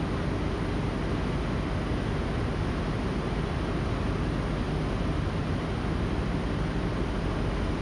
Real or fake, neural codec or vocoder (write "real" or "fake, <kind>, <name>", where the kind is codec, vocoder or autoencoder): real